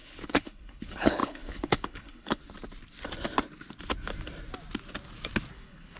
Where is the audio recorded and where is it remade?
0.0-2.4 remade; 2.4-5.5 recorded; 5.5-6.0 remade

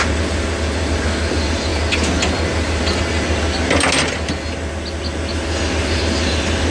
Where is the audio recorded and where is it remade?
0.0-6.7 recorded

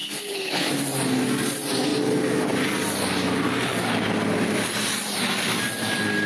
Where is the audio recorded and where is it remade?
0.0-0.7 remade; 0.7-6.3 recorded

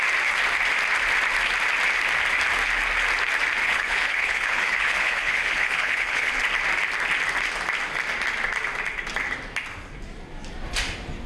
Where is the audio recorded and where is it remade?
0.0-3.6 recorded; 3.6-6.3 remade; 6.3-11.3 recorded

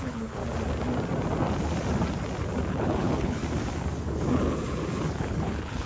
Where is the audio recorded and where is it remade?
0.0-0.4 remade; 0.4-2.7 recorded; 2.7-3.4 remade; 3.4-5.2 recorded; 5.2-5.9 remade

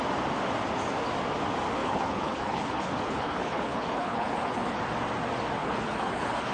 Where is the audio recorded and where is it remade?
0.0-1.8 recorded; 1.8-4.8 remade; 4.8-5.6 recorded; 5.6-6.5 remade

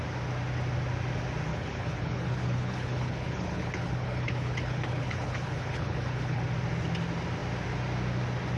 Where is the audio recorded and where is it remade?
0.0-1.5 recorded; 1.5-6.4 remade; 6.4-8.6 recorded

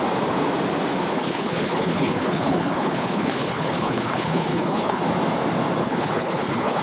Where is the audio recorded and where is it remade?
0.0-1.1 recorded; 1.1-5.0 remade; 5.0-5.8 recorded; 5.8-6.8 remade